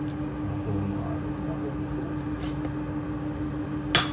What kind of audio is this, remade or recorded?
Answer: recorded